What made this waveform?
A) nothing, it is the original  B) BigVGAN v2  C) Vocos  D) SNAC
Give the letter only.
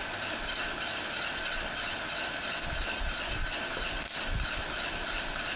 A